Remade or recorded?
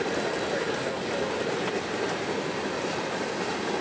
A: recorded